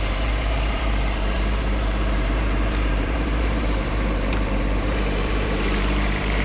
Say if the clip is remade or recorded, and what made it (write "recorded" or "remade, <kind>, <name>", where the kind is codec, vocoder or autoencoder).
remade, vocoder, BigVGAN v2